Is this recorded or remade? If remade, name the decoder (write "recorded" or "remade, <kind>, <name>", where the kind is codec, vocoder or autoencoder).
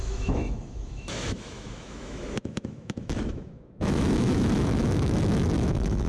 remade, autoencoder, DAC-VAE